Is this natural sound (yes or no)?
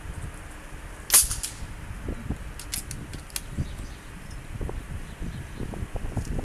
yes